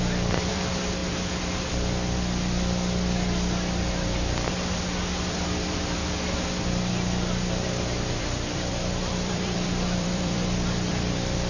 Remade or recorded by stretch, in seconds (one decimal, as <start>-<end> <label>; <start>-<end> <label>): 0.0-1.0 remade; 1.0-5.3 recorded; 5.3-6.0 remade; 6.0-7.5 recorded; 7.5-11.5 remade